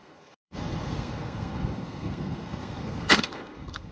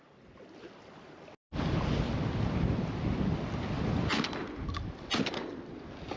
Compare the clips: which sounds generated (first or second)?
first